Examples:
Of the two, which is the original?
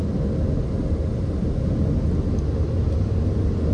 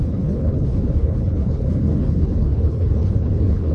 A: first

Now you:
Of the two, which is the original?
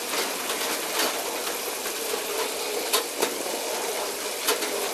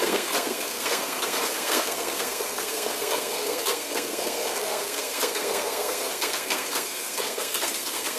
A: first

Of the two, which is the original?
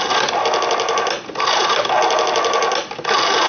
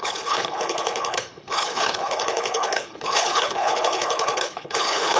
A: first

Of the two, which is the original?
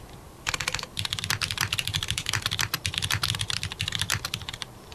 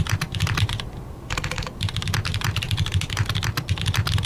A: second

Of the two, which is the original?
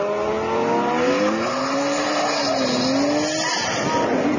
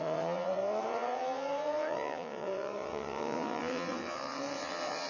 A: first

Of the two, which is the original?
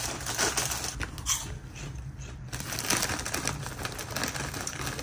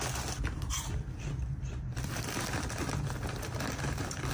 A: first